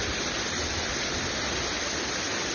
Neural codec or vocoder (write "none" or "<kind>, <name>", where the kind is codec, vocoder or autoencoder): none